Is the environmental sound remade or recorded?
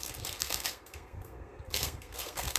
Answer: remade